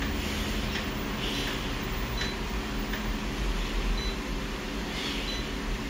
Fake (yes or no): no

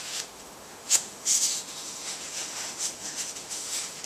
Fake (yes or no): yes